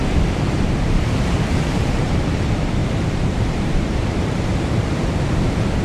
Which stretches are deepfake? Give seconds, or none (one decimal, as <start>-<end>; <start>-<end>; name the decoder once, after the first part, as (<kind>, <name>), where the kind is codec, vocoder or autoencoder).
0.0-2.2 (vocoder, BigVGAN v2); 2.8-4.4